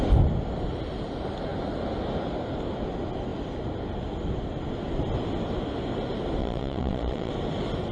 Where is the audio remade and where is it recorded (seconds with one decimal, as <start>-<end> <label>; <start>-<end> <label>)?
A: 0.0-6.4 recorded; 6.4-7.3 remade; 7.3-7.9 recorded